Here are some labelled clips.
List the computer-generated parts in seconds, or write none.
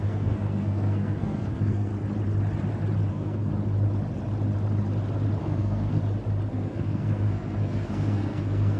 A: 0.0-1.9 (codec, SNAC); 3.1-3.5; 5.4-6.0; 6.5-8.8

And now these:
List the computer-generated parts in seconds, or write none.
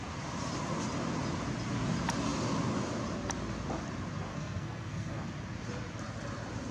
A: 4.3-5.3 (codec, SNAC)